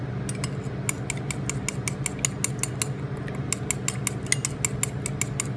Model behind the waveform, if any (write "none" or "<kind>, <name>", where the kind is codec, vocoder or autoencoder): none